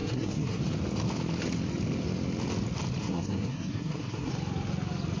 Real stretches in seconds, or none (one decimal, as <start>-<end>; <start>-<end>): 0.6-3.0; 4.3-5.2